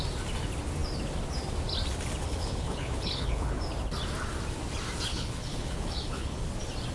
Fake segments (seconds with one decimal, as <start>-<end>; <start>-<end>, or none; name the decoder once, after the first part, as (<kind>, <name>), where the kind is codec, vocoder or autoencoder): 2.2-3.6 (codec, HILCodec); 5.1-6.4